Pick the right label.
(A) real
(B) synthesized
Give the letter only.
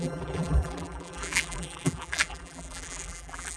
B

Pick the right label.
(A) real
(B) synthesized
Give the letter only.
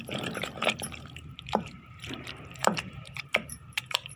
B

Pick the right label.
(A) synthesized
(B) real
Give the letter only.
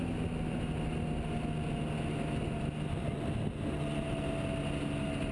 B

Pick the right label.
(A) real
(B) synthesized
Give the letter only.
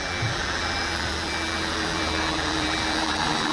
B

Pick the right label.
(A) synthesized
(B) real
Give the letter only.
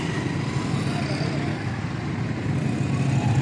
B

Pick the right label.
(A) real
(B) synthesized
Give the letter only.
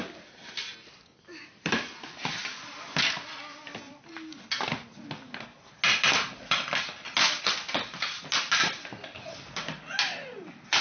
A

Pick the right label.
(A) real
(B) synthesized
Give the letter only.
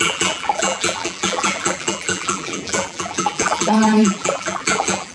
B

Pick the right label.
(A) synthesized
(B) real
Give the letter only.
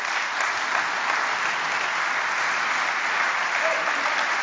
B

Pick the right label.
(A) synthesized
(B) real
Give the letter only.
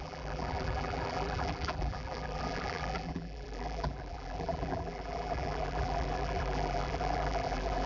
A